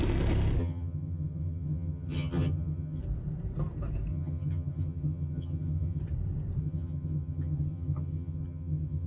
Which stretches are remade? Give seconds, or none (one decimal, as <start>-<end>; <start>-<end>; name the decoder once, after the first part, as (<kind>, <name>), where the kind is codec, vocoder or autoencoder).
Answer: 0.6-3.0 (vocoder, HiFi-GAN); 4.1-6.0; 6.6-9.1